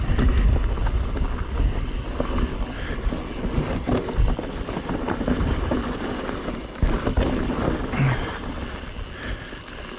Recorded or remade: recorded